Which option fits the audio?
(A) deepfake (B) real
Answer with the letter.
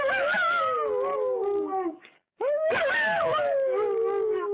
A